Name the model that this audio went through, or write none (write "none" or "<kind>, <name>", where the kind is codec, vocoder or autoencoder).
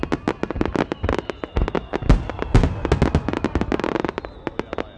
none